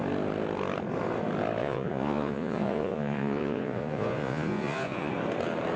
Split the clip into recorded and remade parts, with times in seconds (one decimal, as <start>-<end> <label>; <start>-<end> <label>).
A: 0.0-1.6 recorded; 1.6-5.1 remade; 5.1-5.8 recorded